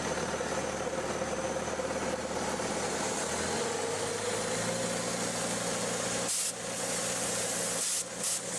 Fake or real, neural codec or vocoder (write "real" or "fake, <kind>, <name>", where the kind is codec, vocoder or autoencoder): real